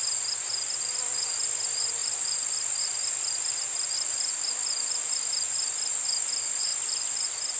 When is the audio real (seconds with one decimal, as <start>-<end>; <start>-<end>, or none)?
0.0-7.6